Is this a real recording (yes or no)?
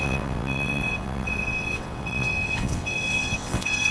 no